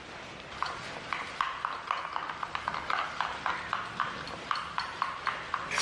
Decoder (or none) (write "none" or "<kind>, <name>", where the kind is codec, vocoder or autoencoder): none